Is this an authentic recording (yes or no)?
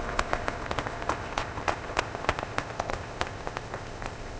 no